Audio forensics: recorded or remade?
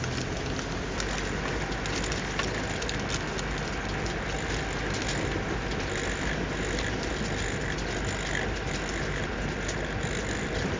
recorded